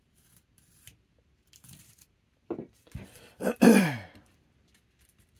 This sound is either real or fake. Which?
real